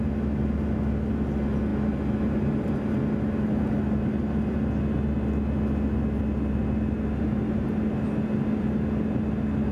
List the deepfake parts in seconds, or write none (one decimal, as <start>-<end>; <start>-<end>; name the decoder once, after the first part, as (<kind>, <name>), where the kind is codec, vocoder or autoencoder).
none